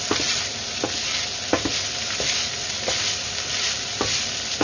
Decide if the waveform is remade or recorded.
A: recorded